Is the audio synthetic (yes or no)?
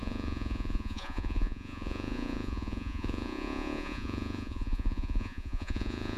yes